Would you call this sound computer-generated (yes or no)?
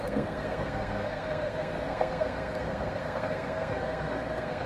yes